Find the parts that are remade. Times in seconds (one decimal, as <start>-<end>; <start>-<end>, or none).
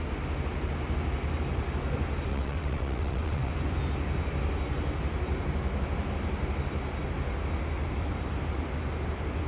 2.3-3.5